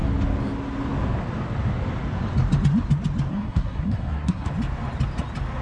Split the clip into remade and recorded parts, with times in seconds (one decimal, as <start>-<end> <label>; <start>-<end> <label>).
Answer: 0.0-3.3 recorded; 3.3-4.5 remade; 4.5-5.6 recorded

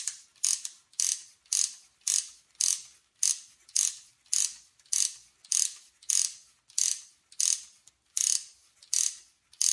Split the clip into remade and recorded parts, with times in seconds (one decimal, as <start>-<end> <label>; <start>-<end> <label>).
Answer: 0.0-9.7 recorded